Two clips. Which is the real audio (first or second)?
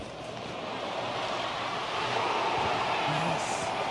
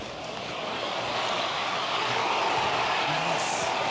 first